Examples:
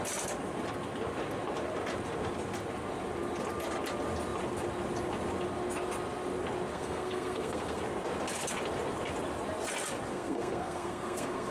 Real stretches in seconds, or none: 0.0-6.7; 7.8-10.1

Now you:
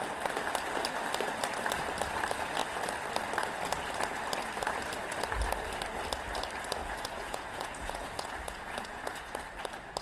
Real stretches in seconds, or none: 0.0-6.8; 9.3-10.0

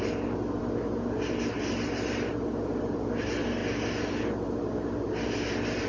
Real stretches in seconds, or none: 0.0-5.9

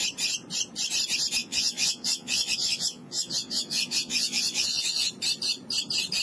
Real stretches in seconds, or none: 0.0-1.4; 5.1-6.2